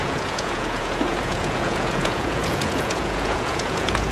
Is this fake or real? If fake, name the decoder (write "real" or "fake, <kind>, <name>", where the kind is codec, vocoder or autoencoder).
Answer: fake, vocoder, Vocos